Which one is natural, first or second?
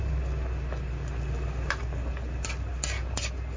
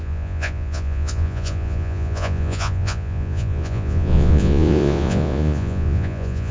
first